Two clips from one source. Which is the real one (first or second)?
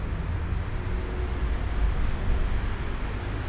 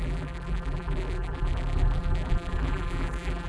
first